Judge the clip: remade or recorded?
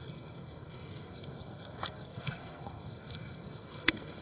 remade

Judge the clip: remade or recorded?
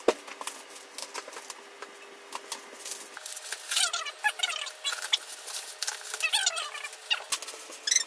recorded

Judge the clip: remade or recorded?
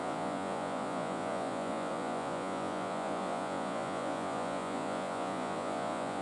remade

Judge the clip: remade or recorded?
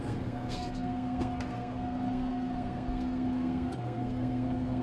remade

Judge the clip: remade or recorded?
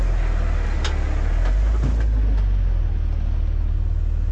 recorded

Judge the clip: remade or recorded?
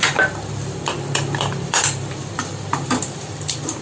remade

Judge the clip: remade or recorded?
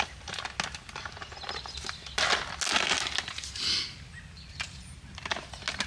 recorded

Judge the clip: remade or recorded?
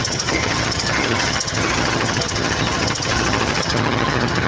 remade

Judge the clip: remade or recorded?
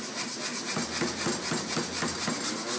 recorded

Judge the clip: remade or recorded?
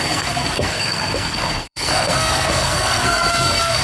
remade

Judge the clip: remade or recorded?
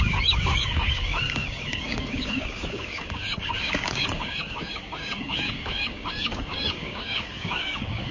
remade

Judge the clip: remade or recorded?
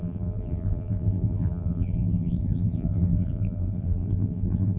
remade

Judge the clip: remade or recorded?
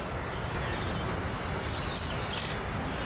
recorded